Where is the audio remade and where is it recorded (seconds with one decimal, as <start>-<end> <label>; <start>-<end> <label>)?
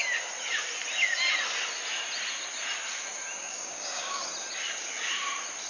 0.0-3.4 recorded; 3.4-4.2 remade; 4.2-5.7 recorded